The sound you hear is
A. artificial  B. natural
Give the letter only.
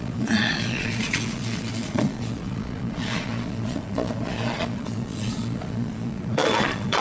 A